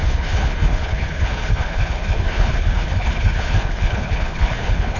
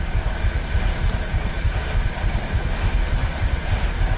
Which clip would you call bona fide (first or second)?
second